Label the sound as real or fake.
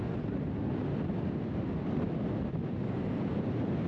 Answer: real